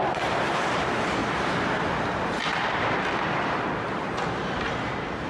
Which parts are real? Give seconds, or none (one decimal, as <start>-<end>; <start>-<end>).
1.2-1.9; 2.4-3.8